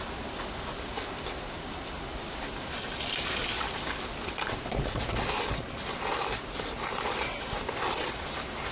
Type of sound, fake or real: real